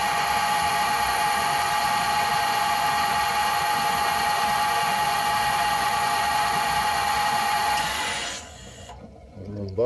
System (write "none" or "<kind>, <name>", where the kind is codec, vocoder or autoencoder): vocoder, Vocos